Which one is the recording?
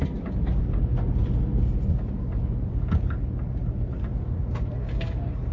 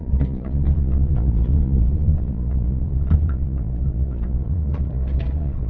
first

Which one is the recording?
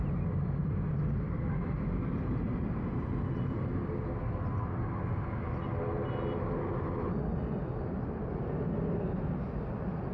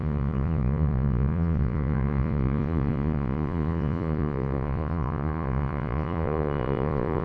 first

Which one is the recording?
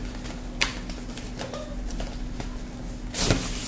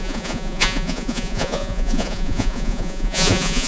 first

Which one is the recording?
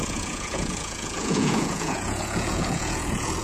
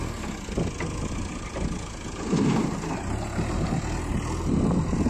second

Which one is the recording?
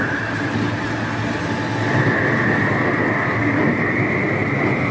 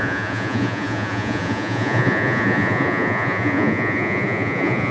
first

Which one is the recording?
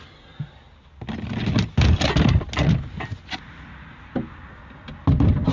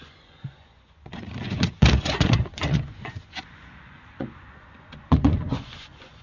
first